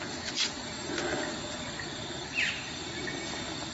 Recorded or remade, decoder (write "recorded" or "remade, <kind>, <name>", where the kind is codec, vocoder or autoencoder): recorded